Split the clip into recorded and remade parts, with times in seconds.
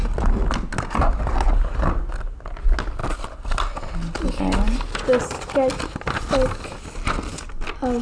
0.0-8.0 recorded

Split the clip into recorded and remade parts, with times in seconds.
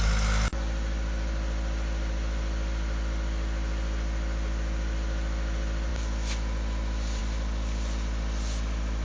0.0-9.0 recorded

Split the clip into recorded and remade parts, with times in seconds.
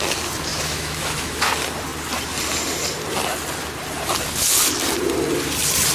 0.0-0.5 recorded; 0.5-1.5 remade; 1.5-5.9 recorded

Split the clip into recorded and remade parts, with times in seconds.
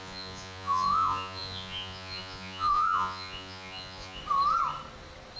0.0-4.2 remade; 4.2-5.4 recorded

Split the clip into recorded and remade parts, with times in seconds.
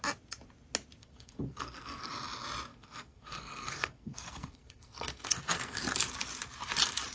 0.0-1.0 recorded; 1.0-2.1 remade; 2.1-2.7 recorded; 2.7-5.8 remade; 5.8-7.1 recorded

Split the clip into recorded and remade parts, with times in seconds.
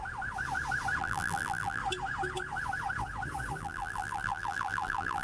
0.0-1.0 recorded; 1.0-1.8 remade; 1.8-3.6 recorded; 3.6-5.2 remade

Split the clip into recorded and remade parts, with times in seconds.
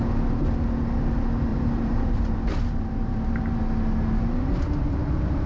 0.0-1.5 recorded; 1.5-3.6 remade; 3.6-5.5 recorded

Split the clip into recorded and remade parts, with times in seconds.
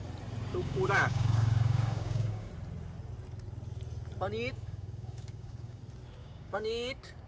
0.0-0.5 recorded; 0.5-2.5 remade; 2.5-4.5 recorded; 4.5-5.8 remade; 5.8-6.2 recorded; 6.2-7.3 remade